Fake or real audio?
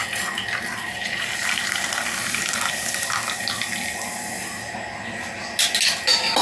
real